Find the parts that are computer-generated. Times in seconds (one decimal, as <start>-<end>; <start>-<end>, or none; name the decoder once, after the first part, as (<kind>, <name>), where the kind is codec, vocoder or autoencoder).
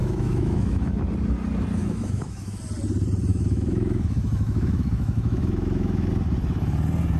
0.0-1.0 (autoencoder, DAC-VAE); 1.8-2.6; 3.3-6.1